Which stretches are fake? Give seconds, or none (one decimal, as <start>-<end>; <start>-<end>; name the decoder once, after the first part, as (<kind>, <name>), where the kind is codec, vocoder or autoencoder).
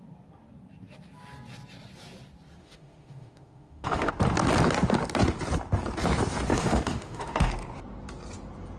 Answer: 2.6-4.1 (autoencoder, DAC-VAE); 6.5-7.5